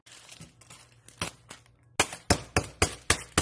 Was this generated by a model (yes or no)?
no